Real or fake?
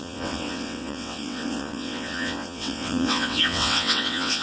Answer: fake